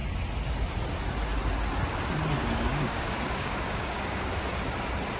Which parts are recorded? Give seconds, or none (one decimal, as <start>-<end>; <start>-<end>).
0.0-2.4; 4.3-5.2